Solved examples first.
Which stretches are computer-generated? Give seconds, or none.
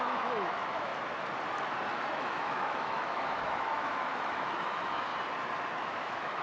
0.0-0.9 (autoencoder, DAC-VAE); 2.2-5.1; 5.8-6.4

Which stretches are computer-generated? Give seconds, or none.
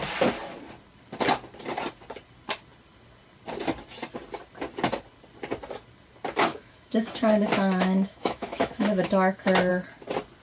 6.5-9.7 (autoencoder, DAC-VAE)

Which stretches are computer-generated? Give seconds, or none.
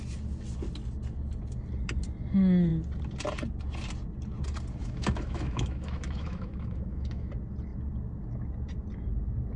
4.8-7.3 (autoencoder, DAC-VAE)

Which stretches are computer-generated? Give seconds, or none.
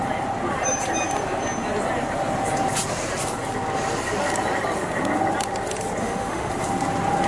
6.0-6.5 (autoencoder, DAC-VAE)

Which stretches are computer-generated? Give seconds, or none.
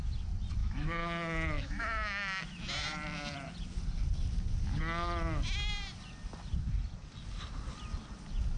0.6-2.4 (autoencoder, DAC-VAE)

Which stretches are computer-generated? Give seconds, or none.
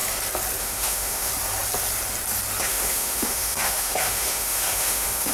0.6-1.3 (autoencoder, DAC-VAE); 2.6-5.3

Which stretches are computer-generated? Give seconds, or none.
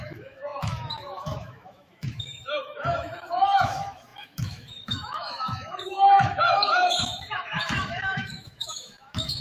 0.0-9.4 (autoencoder, DAC-VAE)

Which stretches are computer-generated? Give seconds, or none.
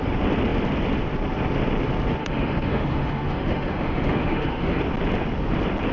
2.2-4.8 (autoencoder, DAC-VAE)